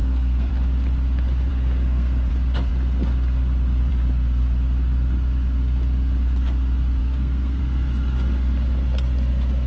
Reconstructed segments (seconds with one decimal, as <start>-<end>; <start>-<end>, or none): 0.0-0.5; 1.5-2.3; 7.0-7.6